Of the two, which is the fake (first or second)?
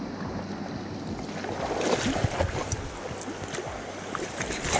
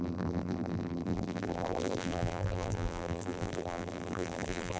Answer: second